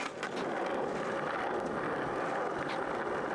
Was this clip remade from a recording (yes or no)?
no